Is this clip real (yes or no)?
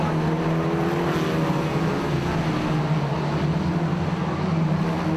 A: yes